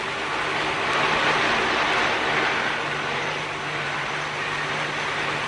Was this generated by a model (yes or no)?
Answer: no